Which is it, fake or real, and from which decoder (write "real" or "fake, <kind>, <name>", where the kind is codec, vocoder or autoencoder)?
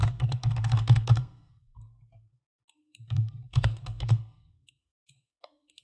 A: fake, codec, SNAC